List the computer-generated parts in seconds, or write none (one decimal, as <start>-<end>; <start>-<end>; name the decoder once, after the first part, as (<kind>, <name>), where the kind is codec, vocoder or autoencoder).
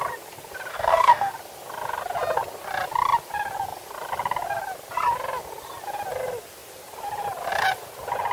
0.7-1.3 (codec, DAC)